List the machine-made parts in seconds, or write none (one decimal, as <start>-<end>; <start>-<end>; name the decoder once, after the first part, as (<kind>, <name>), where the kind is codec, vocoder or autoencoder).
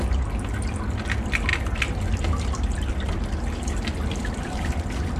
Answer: none